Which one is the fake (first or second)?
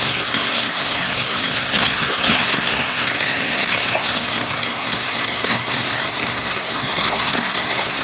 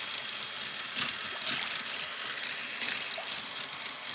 first